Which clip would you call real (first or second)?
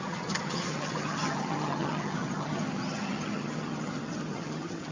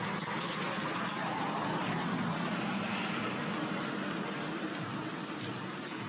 second